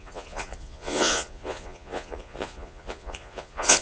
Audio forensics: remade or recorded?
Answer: remade